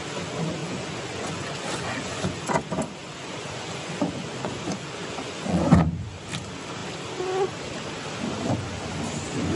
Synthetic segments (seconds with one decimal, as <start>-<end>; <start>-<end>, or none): 0.6-2.4; 3.0-5.9